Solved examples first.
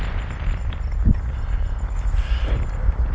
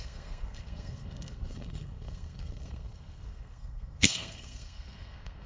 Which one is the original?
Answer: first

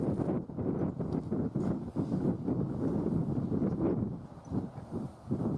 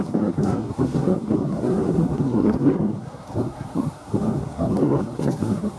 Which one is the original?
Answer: first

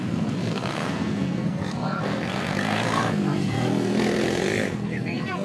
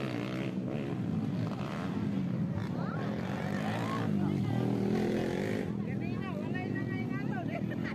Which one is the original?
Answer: second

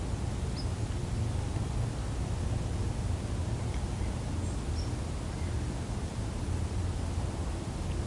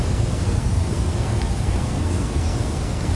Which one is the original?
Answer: first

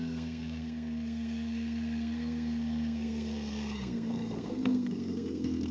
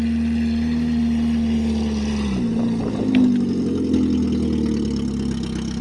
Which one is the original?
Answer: second